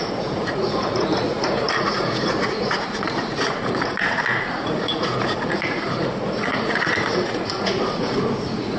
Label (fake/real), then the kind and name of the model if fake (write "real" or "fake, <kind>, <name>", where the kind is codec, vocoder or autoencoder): fake, vocoder, Vocos